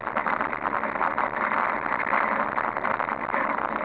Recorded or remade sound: recorded